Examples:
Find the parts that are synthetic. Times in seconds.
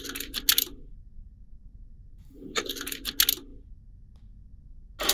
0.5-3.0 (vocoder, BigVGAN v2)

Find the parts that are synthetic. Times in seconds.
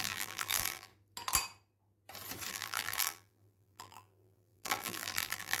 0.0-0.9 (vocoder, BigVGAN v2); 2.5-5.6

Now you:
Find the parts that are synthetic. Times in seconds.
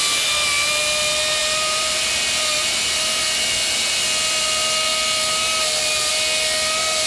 1.4-2.3 (vocoder, BigVGAN v2)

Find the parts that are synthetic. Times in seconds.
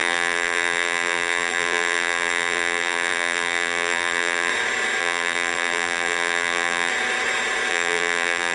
0.0-4.5 (vocoder, BigVGAN v2); 5.0-6.9; 7.7-8.5